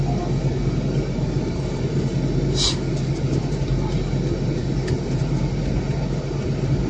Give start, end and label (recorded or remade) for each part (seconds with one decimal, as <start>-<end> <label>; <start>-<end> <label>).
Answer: 0.0-6.9 recorded